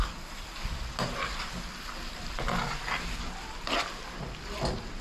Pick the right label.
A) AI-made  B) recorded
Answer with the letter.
B